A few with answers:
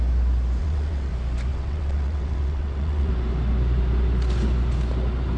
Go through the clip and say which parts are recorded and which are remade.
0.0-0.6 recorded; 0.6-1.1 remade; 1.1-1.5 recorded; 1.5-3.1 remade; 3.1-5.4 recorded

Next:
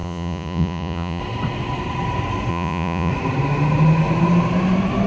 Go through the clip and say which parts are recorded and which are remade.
0.0-1.2 remade; 1.2-2.5 recorded; 2.5-3.1 remade; 3.1-5.1 recorded

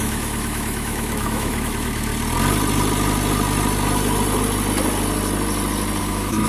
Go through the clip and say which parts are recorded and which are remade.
0.0-2.1 remade; 2.1-6.0 recorded; 6.0-6.5 remade

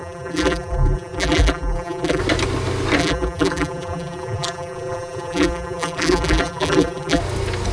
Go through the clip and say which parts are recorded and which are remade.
0.0-2.2 remade; 2.2-3.0 recorded; 3.0-7.2 remade; 7.2-7.7 recorded